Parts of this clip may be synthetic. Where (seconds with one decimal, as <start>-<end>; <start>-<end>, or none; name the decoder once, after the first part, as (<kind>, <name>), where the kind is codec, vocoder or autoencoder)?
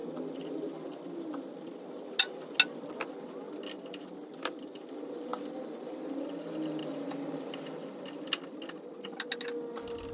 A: none